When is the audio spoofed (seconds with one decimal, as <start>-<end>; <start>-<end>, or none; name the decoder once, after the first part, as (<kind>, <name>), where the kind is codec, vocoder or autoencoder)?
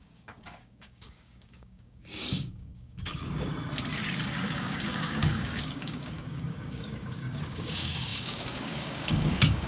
0.0-3.5 (codec, DAC); 4.2-9.7